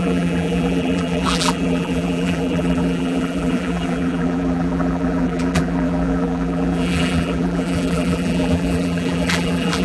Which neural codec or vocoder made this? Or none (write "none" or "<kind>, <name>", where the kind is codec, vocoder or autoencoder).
vocoder, BigVGAN v2